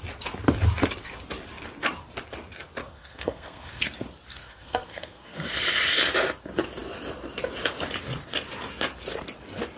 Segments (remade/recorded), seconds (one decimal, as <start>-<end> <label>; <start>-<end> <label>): 0.0-2.8 recorded; 2.8-3.8 remade; 3.8-4.3 recorded; 4.3-5.5 remade; 5.5-9.8 recorded